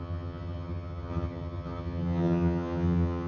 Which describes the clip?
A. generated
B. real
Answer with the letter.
A